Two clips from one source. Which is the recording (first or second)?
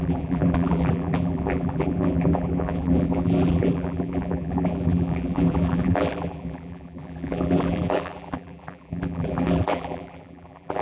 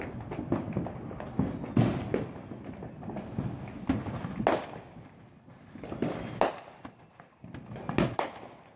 second